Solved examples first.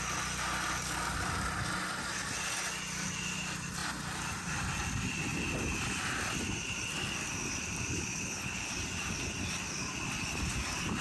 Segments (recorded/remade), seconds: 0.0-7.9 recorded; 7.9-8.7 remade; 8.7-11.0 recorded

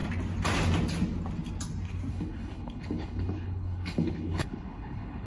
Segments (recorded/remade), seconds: 0.0-2.1 recorded; 2.1-5.3 remade

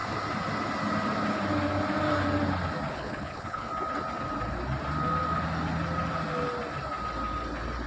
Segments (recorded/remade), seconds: 0.0-2.9 recorded; 2.9-3.7 remade; 3.7-7.9 recorded

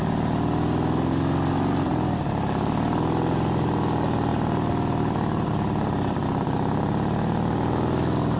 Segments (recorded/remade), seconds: 0.0-8.4 recorded

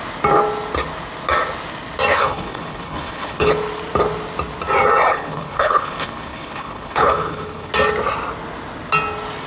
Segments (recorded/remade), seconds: 0.0-2.1 recorded; 2.1-3.5 remade; 3.5-5.1 recorded; 5.1-7.7 remade; 7.7-9.5 recorded